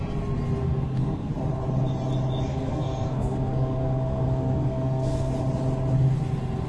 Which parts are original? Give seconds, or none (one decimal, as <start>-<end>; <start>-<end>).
0.0-0.6; 1.3-2.5; 5.3-6.7